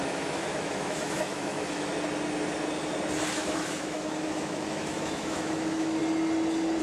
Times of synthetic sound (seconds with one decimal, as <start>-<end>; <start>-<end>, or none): 0.0-1.9; 3.3-6.0